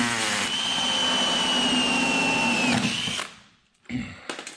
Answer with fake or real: real